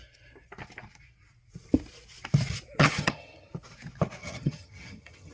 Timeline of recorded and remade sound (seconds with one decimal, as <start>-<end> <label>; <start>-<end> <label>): 0.0-2.8 recorded; 2.8-3.5 remade; 3.5-4.2 recorded; 4.2-5.3 remade